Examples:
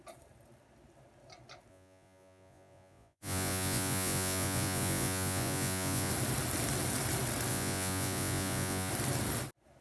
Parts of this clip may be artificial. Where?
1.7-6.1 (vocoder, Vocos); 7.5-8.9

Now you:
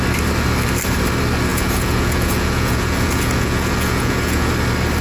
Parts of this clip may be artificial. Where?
1.5-4.5 (vocoder, Vocos)